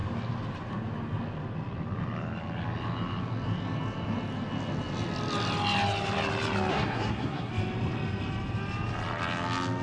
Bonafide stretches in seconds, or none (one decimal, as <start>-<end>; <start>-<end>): 0.0-6.7; 7.5-9.8